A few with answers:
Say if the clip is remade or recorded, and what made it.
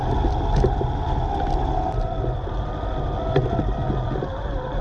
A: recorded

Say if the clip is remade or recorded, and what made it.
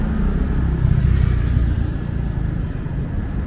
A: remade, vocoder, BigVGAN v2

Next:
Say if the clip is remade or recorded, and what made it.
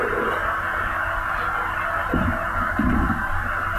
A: recorded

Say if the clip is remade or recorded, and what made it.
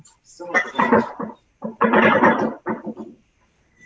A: remade, vocoder, BigVGAN v2